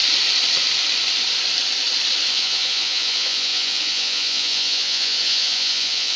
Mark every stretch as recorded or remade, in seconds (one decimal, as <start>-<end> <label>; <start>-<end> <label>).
0.0-2.3 recorded; 2.3-6.2 remade